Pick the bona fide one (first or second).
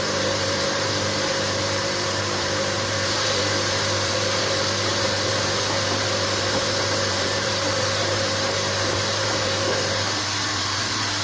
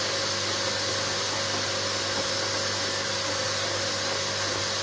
second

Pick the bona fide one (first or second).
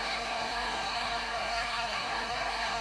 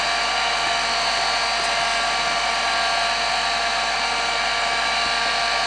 second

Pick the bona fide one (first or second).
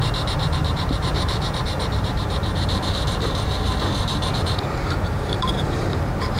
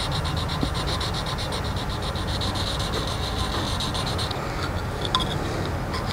second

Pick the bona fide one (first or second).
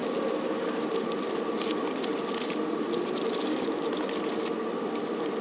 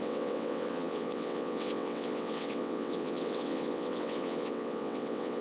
first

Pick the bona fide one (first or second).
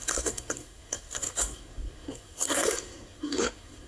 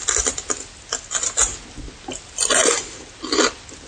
second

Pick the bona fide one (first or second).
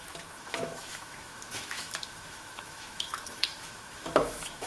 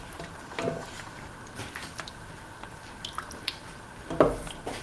second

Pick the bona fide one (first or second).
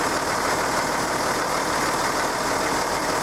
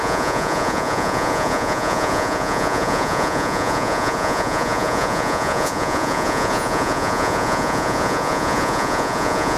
first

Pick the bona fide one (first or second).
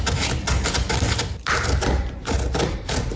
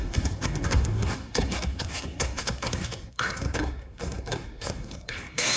first